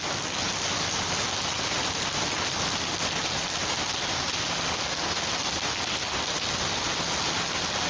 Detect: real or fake real